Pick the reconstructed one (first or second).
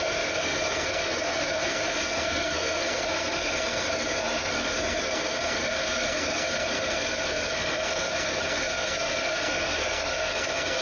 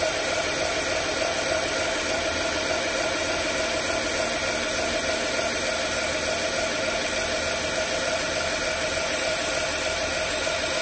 first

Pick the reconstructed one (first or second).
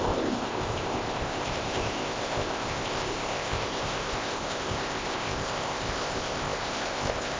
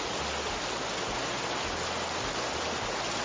first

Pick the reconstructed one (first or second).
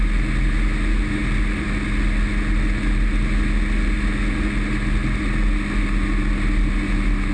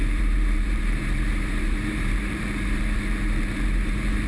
second